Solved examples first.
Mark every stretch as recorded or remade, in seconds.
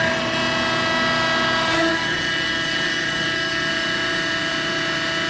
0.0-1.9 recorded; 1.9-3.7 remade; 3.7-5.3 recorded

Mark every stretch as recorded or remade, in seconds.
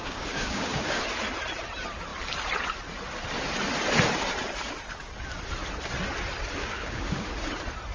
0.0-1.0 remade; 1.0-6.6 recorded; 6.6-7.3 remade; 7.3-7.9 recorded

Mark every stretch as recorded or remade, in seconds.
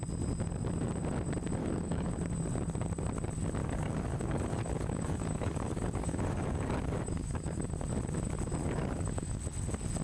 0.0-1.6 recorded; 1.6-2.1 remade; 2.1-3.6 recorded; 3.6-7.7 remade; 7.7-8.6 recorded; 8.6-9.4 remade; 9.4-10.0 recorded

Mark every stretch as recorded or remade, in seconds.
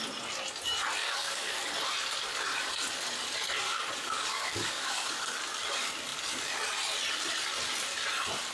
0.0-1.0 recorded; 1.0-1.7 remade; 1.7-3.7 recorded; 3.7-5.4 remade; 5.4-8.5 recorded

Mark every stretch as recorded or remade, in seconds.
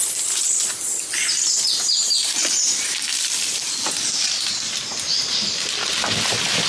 0.0-6.7 recorded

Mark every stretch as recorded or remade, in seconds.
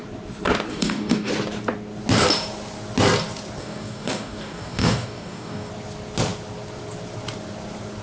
0.0-0.7 recorded; 0.7-1.3 remade; 1.3-3.6 recorded; 3.6-5.7 remade; 5.7-8.0 recorded